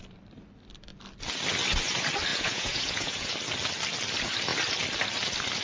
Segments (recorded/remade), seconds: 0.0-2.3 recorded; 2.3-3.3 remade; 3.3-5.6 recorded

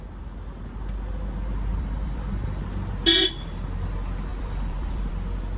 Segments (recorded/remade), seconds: 0.0-1.7 recorded; 1.7-2.6 remade; 2.6-4.3 recorded; 4.3-5.1 remade; 5.1-5.6 recorded

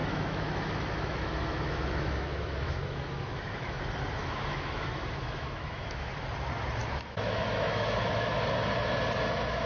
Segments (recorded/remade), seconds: 0.0-3.8 remade; 3.8-4.2 recorded; 4.2-6.1 remade; 6.1-6.8 recorded; 6.8-8.3 remade; 8.3-9.7 recorded

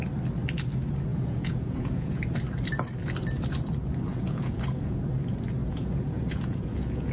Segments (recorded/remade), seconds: 0.0-1.1 recorded; 1.1-2.2 remade; 2.2-4.1 recorded; 4.1-5.0 remade; 5.0-5.6 recorded; 5.6-7.1 remade

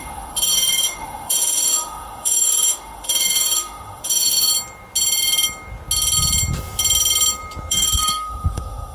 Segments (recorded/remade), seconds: 0.0-4.5 remade; 4.5-7.7 recorded; 7.7-8.9 remade